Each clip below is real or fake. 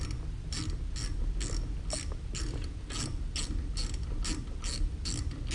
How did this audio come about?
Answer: real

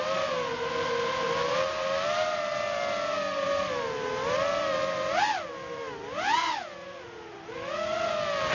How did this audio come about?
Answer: real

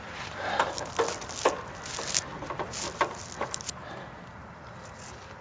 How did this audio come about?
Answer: real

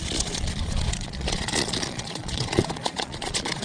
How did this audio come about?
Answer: fake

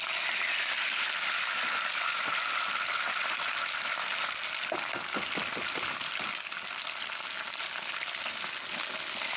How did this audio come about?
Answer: real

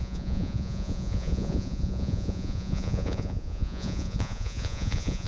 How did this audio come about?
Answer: fake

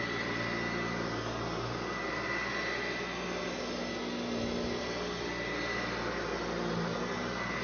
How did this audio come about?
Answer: real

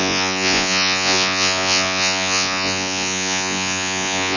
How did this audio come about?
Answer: fake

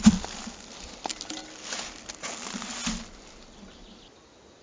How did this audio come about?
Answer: real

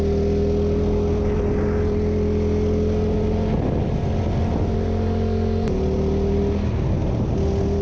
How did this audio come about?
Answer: real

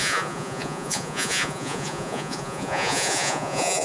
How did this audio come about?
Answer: fake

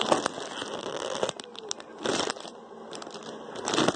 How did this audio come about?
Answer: real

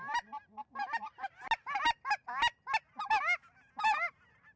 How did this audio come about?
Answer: real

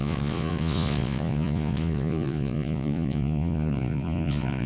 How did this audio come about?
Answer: fake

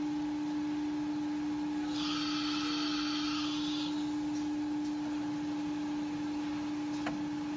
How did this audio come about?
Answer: real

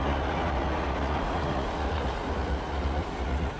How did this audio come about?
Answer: fake